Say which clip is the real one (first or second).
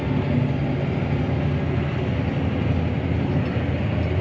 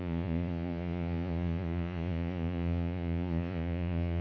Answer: first